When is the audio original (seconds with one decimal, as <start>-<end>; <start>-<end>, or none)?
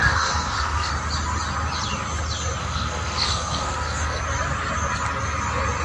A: 0.9-2.6; 4.2-5.8